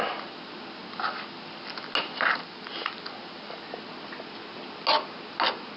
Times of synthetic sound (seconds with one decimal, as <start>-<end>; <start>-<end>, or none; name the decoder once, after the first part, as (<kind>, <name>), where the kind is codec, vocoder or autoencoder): none